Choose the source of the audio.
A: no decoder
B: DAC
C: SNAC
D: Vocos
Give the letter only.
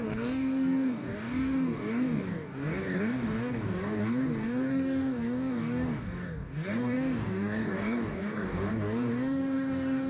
B